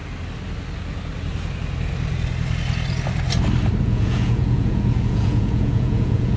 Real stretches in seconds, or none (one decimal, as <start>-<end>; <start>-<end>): 0.0-3.8